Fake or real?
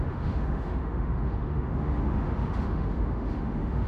fake